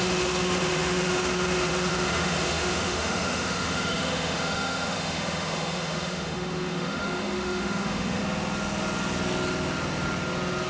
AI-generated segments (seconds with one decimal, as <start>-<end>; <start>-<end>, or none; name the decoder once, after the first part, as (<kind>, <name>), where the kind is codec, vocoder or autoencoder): 0.0-8.2 (autoencoder, DAC-VAE)

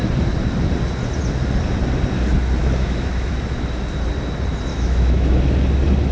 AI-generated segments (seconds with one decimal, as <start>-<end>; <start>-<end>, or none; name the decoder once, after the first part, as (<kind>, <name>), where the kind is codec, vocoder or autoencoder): 2.6-3.3 (autoencoder, DAC-VAE); 4.7-5.4